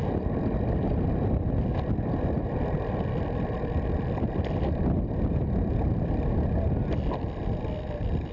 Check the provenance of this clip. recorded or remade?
recorded